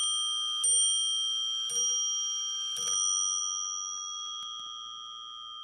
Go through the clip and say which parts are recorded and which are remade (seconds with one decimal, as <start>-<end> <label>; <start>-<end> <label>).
0.0-5.6 recorded